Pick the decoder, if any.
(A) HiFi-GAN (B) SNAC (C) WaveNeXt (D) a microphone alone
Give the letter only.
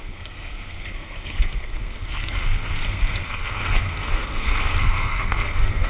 B